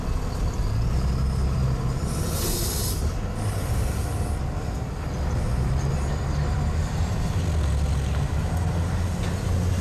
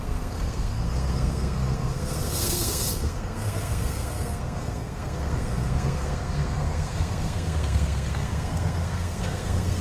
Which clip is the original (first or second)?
first